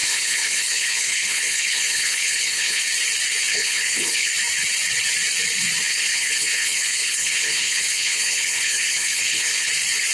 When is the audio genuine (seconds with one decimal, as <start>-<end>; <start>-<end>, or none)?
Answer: 2.8-3.5; 4.3-5.9; 9.7-10.1